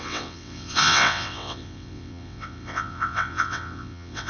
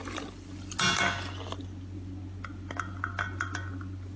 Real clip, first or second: second